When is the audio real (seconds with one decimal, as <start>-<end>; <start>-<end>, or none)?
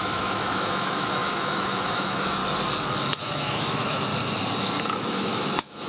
2.4-3.2; 4.1-4.8